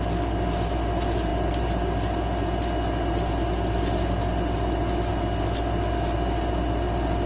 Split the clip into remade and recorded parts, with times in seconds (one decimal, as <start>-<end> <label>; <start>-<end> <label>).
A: 0.0-7.3 recorded